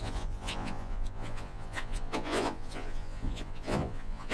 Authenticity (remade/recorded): remade